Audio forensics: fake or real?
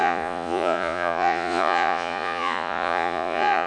fake